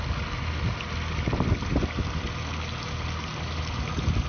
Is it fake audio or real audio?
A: real